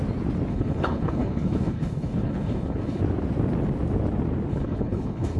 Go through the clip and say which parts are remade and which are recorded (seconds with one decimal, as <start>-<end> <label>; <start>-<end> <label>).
0.0-0.5 recorded; 0.5-3.0 remade; 3.0-4.5 recorded; 4.5-5.4 remade